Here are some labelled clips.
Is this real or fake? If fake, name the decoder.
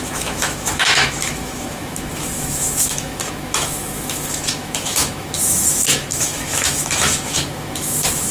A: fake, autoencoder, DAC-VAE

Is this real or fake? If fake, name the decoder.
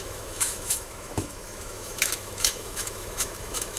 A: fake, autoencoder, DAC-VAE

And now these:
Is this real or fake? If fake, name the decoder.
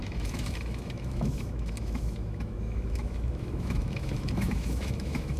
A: fake, autoencoder, DAC-VAE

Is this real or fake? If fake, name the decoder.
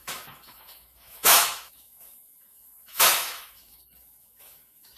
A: fake, autoencoder, DAC-VAE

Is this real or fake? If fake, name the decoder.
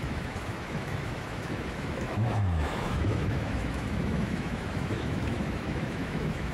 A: fake, autoencoder, DAC-VAE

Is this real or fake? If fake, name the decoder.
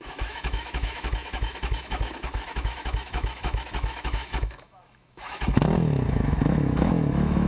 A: fake, autoencoder, DAC-VAE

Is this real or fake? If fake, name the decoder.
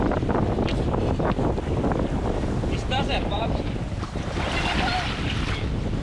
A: real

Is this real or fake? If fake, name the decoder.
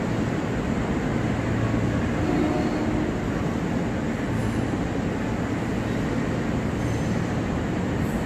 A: real